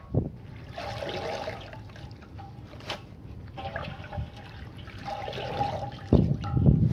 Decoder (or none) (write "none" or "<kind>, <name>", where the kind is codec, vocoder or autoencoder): none